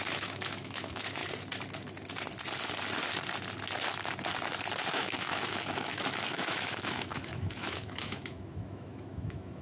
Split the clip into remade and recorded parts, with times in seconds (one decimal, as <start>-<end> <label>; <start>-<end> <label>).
0.0-1.2 remade; 1.2-4.9 recorded; 4.9-9.6 remade